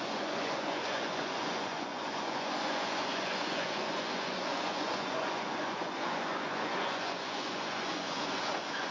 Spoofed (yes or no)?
yes